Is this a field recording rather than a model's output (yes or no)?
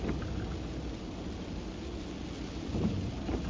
yes